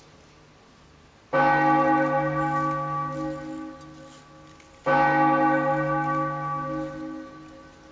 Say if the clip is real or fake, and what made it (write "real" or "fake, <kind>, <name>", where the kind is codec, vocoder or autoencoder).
real